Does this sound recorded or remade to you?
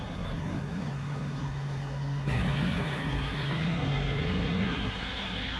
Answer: remade